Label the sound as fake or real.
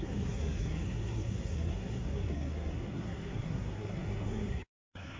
fake